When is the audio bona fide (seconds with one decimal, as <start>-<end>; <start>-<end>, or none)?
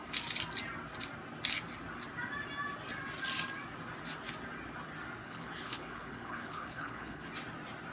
0.0-5.2; 7.3-7.9